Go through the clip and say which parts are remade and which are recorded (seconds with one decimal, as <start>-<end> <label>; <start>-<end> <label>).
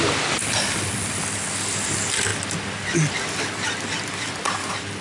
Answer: 0.0-5.0 recorded